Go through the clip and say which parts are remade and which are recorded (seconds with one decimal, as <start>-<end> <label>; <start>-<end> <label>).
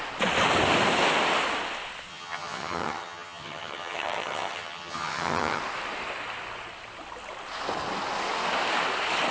0.0-2.1 recorded; 2.1-5.6 remade; 5.6-9.3 recorded